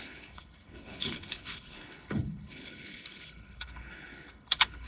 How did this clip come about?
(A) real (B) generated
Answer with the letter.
B